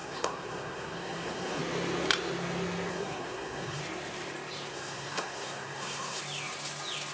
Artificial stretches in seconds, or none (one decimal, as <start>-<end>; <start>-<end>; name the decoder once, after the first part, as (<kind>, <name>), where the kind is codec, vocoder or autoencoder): 0.0-1.6 (codec, SNAC); 2.9-3.8; 4.7-6.2